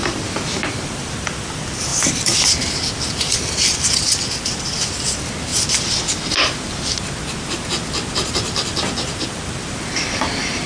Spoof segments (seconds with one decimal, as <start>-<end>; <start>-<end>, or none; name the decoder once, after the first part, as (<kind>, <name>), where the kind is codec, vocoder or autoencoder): 0.0-5.5 (vocoder, BigVGAN v2); 8.3-10.7